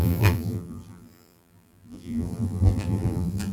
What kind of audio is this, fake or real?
fake